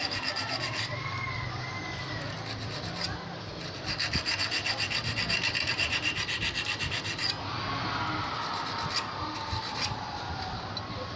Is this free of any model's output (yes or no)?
yes